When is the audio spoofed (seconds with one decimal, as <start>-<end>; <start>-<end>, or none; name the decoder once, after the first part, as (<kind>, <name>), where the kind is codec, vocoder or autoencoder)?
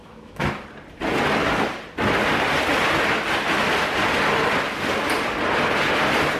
0.0-0.5 (autoencoder, DAC-VAE)